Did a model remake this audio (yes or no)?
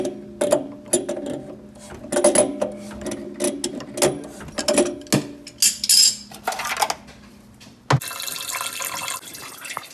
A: no